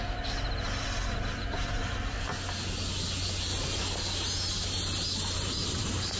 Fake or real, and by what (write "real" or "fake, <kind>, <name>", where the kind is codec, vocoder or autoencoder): real